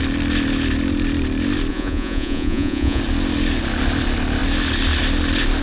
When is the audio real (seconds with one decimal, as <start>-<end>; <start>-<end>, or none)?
0.0-1.7; 3.0-5.6